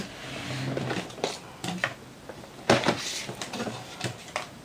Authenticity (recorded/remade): remade